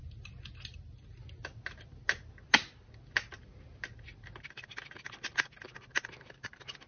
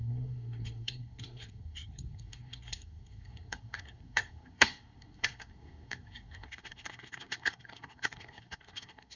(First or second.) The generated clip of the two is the second